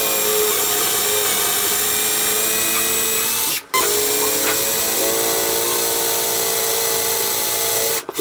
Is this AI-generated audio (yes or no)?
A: no